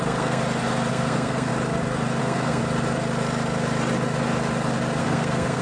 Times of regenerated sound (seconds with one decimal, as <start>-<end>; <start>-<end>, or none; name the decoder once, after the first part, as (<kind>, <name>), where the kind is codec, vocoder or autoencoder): 0.0-0.4 (codec, SNAC); 0.9-1.5; 2.2-2.6; 5.0-5.6